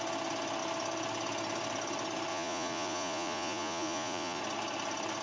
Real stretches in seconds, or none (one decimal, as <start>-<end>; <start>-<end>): 0.0-2.3; 4.4-5.2